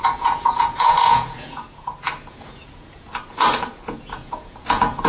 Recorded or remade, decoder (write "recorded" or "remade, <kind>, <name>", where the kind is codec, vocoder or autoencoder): remade, vocoder, Vocos